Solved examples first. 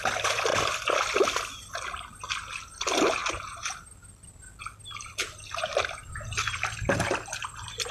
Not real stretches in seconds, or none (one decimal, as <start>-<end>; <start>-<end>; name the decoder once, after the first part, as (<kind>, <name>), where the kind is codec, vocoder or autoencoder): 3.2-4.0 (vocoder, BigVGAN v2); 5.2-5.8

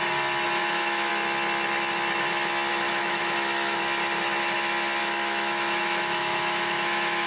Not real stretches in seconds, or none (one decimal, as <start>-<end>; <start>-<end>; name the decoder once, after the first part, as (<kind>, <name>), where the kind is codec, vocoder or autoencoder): 0.6-1.1 (autoencoder, DAC-VAE); 2.7-3.8; 5.0-7.3

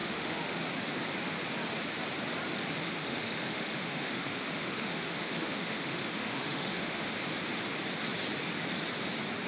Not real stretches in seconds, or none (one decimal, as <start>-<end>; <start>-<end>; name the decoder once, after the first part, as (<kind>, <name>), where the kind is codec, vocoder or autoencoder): 0.0-0.6 (autoencoder, DAC-VAE); 2.8-7.1